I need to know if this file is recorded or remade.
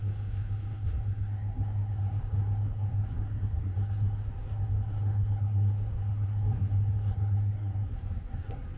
remade